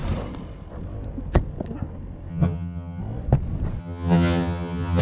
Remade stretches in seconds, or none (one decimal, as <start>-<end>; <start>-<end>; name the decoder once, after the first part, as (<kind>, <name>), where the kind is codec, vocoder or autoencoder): 2.3-3.0 (vocoder, HiFi-GAN); 3.8-5.0